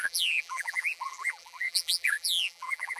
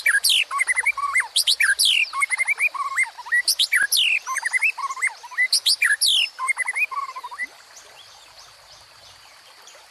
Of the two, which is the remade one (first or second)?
first